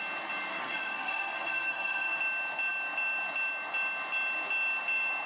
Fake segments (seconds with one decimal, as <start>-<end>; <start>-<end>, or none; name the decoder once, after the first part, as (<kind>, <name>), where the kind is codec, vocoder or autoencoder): 0.5-2.2 (codec, SNAC)